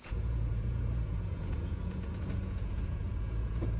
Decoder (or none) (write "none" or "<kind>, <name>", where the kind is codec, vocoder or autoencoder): vocoder, Vocos